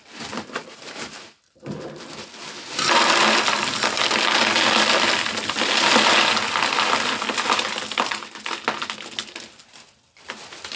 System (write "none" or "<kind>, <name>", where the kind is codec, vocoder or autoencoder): none